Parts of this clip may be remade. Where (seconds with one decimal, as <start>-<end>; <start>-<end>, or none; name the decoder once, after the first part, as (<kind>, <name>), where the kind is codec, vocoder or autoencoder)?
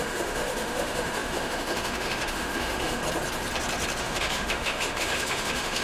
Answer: 0.0-3.0 (autoencoder, DAC-VAE); 4.0-5.8